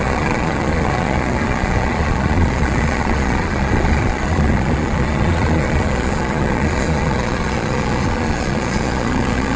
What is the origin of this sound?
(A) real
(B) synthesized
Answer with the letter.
B